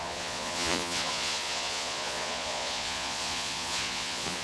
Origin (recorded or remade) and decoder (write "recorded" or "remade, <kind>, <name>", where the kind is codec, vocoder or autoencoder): remade, vocoder, Vocos